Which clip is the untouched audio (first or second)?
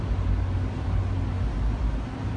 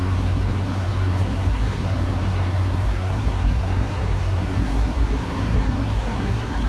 first